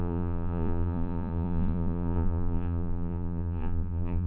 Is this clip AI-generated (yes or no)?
yes